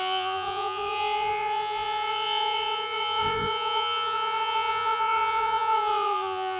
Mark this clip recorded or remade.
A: remade